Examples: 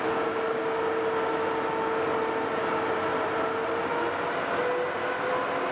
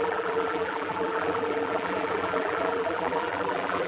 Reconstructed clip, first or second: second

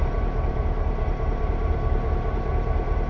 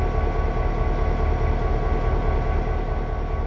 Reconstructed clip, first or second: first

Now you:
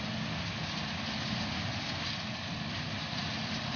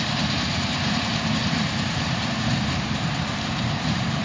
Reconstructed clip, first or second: second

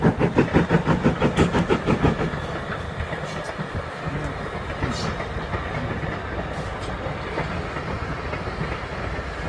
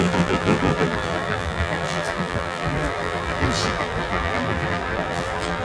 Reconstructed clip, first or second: second